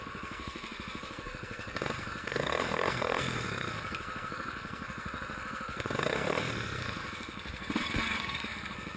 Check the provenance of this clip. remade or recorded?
remade